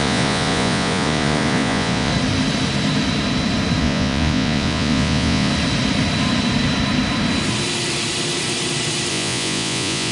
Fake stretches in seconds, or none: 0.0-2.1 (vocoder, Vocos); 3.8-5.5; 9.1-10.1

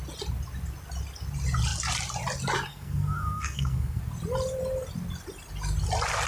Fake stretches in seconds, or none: 2.7-4.0 (codec, SNAC)

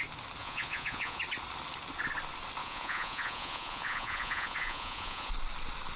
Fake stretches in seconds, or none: 0.4-1.2 (vocoder, Vocos); 2.6-5.3

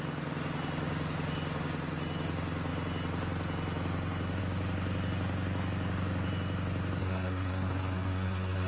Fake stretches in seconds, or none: 7.0-8.7 (codec, SNAC)

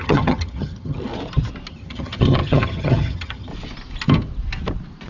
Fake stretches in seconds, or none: 0.0-1.1 (vocoder, HiFi-GAN); 1.7-3.5

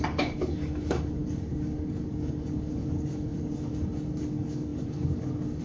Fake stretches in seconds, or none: 0.0-5.6 (codec, DAC)

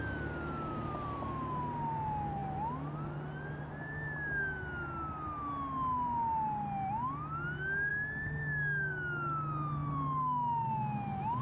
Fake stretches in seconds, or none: none

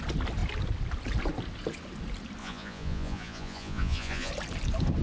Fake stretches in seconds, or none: 2.4-4.3 (vocoder, Vocos)